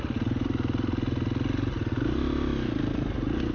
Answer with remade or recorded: recorded